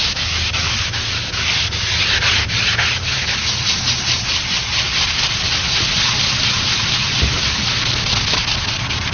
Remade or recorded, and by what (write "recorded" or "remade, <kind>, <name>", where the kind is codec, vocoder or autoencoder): recorded